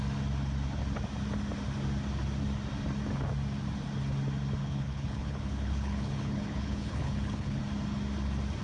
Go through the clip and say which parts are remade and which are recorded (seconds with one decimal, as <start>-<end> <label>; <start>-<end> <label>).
0.0-4.6 recorded; 4.6-7.6 remade; 7.6-8.6 recorded